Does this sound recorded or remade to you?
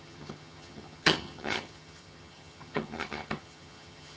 remade